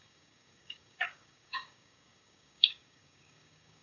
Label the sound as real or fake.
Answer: fake